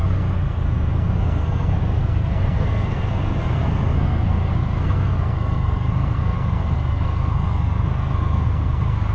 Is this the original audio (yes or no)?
no